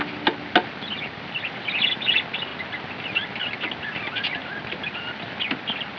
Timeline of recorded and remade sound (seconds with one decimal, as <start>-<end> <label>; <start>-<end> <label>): 0.0-6.0 recorded